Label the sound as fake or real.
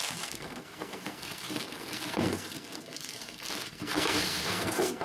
fake